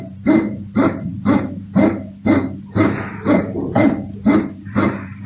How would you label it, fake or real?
fake